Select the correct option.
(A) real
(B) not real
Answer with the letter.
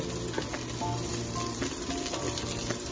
A